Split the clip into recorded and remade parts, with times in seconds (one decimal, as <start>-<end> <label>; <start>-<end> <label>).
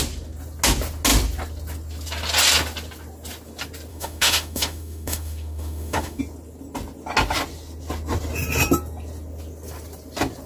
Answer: 0.0-3.9 recorded; 3.9-6.2 remade; 6.2-10.5 recorded